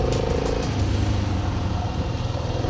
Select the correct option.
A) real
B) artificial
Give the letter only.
A